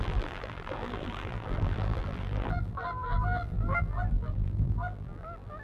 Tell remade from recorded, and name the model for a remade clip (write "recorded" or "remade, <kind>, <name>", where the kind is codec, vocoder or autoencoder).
remade, vocoder, BigVGAN v2